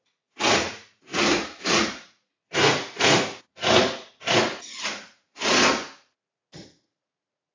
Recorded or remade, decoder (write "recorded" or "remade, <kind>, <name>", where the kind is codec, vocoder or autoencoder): remade, vocoder, Vocos